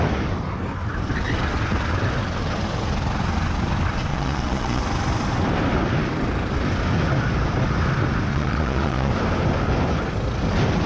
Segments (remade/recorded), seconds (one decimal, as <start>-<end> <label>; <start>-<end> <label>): 0.0-4.1 recorded; 4.1-4.8 remade; 4.8-8.3 recorded; 8.3-9.1 remade; 9.1-10.9 recorded